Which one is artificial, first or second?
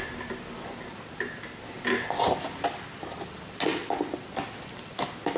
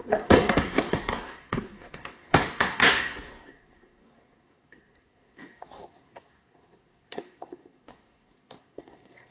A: second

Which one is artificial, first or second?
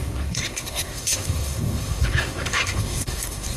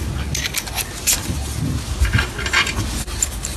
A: first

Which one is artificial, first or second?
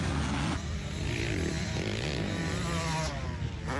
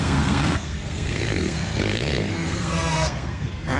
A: second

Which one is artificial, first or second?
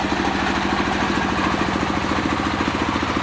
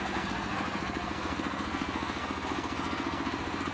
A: second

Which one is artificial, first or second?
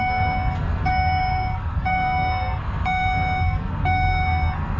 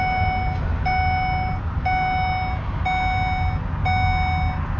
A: first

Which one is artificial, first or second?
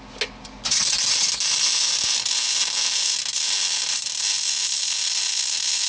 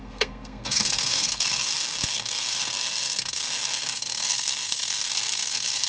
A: second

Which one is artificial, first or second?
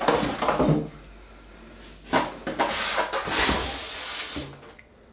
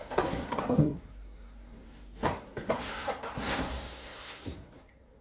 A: second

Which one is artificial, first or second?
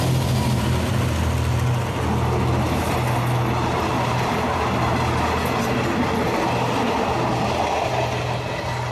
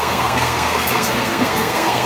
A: second